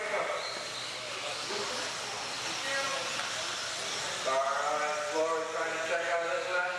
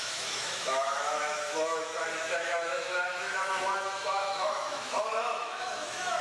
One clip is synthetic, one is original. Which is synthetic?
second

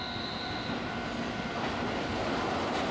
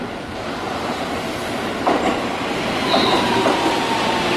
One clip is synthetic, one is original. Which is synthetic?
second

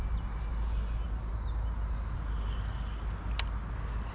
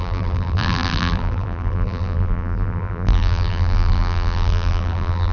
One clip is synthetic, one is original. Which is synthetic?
second